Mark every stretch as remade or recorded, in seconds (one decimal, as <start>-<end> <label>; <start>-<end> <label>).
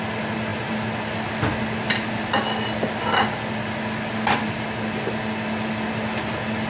0.0-6.7 recorded